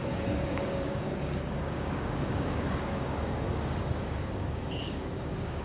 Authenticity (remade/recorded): remade